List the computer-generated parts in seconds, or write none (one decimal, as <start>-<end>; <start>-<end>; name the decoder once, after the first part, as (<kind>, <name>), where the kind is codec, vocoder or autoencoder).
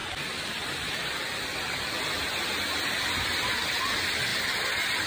0.0-1.4 (vocoder, BigVGAN v2); 4.3-5.1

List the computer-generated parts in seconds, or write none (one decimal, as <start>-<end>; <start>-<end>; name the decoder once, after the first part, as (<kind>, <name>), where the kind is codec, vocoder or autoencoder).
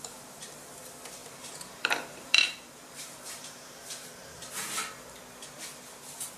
1.2-4.1 (vocoder, BigVGAN v2)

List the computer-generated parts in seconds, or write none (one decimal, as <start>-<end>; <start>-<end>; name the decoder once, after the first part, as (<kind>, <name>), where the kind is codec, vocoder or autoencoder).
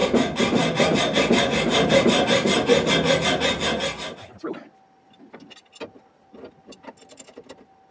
none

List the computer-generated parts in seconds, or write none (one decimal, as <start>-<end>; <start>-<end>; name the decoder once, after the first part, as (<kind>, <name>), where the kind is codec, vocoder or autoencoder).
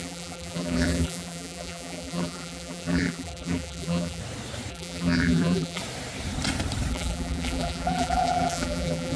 0.0-4.2 (vocoder, BigVGAN v2); 4.7-5.8; 6.9-9.2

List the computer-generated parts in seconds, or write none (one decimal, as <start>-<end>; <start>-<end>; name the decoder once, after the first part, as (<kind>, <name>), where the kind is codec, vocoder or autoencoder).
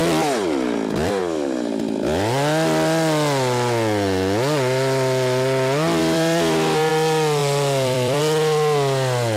6.0-6.9 (vocoder, BigVGAN v2); 7.4-8.2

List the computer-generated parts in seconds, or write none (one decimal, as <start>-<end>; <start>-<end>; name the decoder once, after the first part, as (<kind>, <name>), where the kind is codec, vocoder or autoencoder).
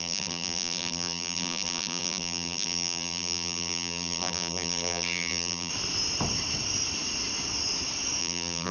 0.0-5.7 (vocoder, BigVGAN v2); 8.2-8.7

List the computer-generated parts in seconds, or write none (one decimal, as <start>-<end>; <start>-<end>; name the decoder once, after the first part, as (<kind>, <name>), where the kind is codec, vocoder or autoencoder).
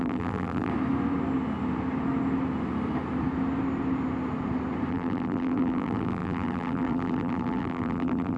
0.0-0.7 (vocoder, BigVGAN v2); 4.9-8.4